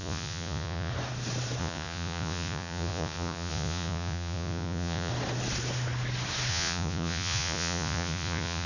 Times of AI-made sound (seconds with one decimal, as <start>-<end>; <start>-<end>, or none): 0.0-0.9; 1.6-5.1; 6.5-8.7